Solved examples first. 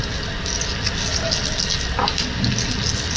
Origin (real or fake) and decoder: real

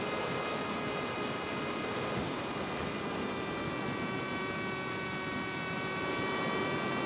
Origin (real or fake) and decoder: fake, vocoder, BigVGAN v2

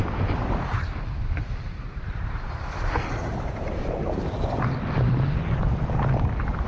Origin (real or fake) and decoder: fake, vocoder, BigVGAN v2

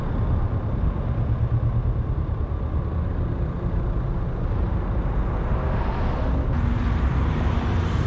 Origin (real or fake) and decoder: real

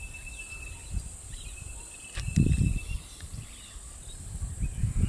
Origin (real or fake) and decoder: fake, vocoder, BigVGAN v2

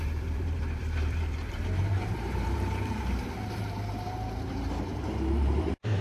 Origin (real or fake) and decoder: fake, vocoder, BigVGAN v2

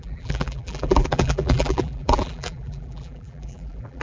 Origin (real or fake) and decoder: fake, vocoder, BigVGAN v2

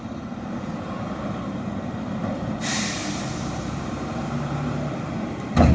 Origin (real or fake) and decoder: fake, vocoder, BigVGAN v2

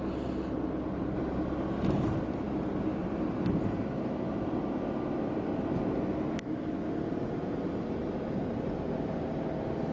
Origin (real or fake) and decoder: real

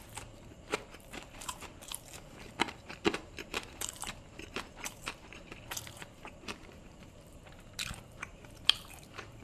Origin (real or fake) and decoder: fake, vocoder, BigVGAN v2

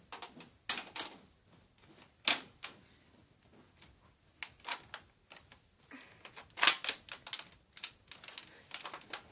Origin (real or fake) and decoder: real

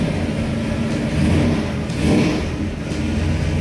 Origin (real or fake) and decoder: real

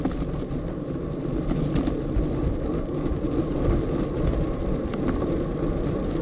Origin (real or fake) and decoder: real